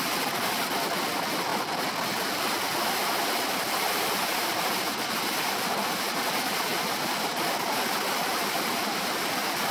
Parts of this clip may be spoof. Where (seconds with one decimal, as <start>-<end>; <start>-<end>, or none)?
none